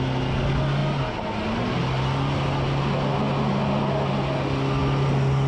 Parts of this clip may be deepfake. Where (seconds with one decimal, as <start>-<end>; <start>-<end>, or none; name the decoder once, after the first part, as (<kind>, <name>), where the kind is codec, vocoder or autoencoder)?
none